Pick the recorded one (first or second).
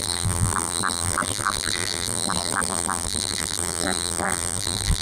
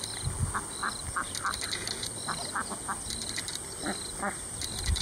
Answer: second